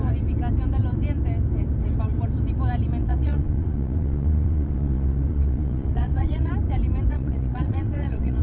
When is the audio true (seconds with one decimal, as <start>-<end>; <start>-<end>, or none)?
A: 0.0-3.0; 6.5-7.1

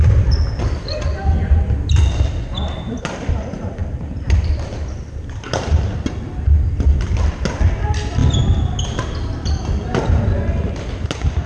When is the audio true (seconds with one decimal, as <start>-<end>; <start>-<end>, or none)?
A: 0.0-11.5